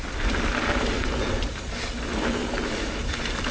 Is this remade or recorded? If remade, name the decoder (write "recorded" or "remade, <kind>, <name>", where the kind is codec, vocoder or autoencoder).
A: recorded